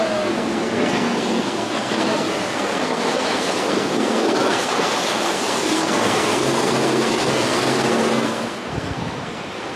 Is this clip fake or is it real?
fake